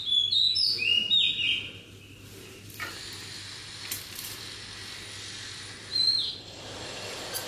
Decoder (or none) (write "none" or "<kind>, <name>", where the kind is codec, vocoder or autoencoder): none